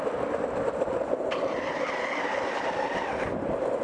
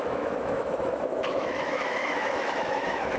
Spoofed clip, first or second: second